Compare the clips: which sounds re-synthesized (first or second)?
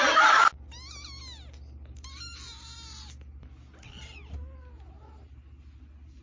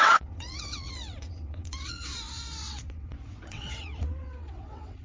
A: second